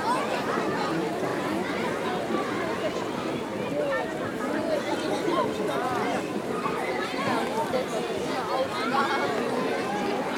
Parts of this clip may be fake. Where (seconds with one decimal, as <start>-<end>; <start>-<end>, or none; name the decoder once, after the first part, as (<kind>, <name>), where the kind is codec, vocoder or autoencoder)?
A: 0.0-3.5 (vocoder, BigVGAN v2); 5.2-7.8; 9.9-10.4